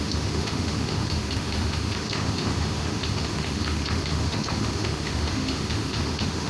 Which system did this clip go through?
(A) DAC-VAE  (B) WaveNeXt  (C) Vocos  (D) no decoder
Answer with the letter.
A